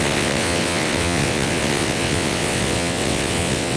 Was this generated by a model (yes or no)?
yes